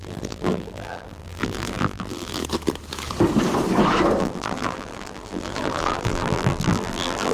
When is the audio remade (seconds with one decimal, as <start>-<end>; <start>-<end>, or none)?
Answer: 0.0-2.4; 4.2-7.3